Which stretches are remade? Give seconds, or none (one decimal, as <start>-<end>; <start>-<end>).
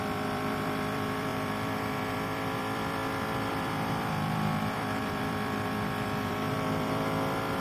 0.0-3.0; 3.5-7.6